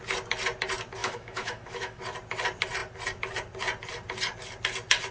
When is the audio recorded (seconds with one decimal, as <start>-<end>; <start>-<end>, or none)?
0.0-1.0; 2.0-5.1